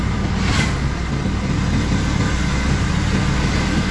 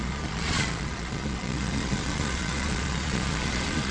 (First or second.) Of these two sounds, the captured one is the first